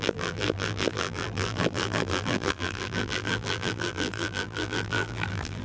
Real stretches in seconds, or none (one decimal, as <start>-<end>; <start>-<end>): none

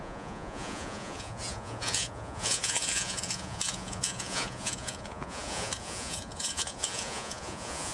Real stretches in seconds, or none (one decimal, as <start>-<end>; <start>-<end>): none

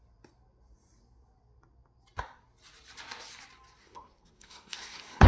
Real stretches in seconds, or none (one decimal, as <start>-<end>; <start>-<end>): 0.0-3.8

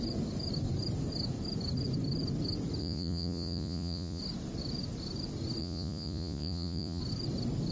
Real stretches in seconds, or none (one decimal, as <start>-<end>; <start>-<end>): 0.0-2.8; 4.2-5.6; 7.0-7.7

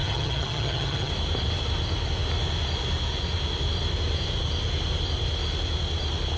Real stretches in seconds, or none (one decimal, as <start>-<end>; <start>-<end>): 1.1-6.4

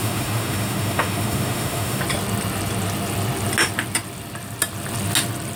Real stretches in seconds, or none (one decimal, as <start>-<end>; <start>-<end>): 2.0-5.6

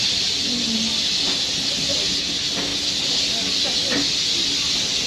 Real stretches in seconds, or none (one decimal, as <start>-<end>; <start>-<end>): 0.0-5.1